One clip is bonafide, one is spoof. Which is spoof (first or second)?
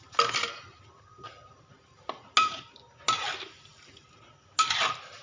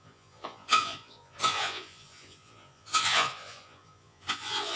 second